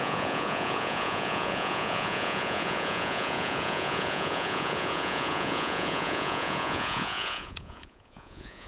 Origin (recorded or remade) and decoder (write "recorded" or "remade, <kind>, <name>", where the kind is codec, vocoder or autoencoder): remade, vocoder, Vocos